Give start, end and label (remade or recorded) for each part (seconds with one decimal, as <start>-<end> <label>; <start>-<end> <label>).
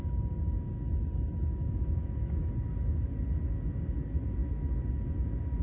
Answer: 0.0-1.5 recorded; 1.5-2.5 remade; 2.5-4.4 recorded; 4.4-4.9 remade; 4.9-5.6 recorded